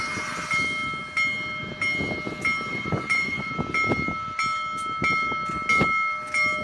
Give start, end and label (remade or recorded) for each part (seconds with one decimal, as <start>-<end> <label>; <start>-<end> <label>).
0.0-2.7 recorded; 2.7-3.5 remade; 3.5-6.6 recorded